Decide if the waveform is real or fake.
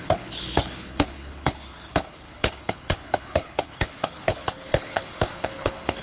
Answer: fake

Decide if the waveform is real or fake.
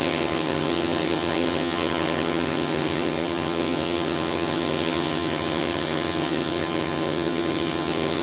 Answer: fake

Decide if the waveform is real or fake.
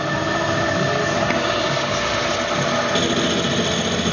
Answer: real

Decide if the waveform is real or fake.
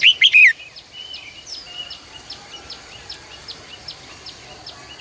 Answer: real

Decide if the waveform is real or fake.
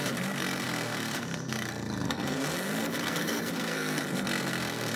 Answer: fake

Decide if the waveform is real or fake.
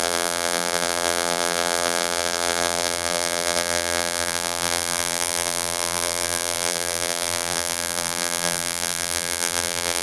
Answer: fake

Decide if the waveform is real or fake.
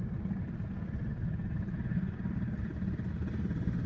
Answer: real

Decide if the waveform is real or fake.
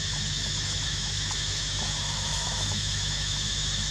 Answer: fake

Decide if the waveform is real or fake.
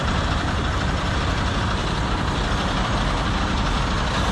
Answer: real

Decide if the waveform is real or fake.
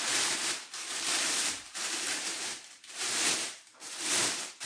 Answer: fake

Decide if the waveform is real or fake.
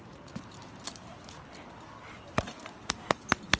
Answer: real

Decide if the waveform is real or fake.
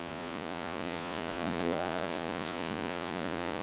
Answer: fake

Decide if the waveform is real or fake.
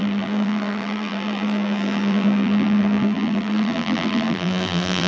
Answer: fake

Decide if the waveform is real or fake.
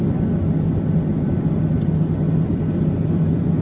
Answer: real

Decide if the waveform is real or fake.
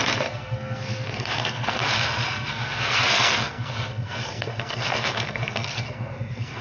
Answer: fake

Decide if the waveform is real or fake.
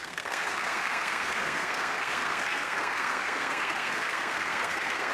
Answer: fake